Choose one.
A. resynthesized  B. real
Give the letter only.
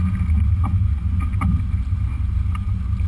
B